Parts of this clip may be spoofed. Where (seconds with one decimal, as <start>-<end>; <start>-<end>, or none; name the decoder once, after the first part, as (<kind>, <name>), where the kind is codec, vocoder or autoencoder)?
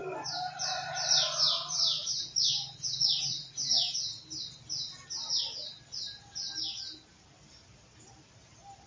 1.7-3.6 (vocoder, Vocos)